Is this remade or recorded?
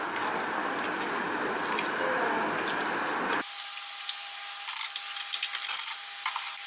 recorded